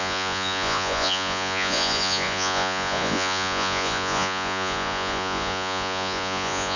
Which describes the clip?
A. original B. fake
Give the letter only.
B